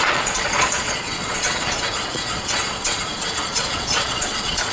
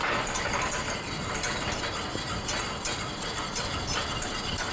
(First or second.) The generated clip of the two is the first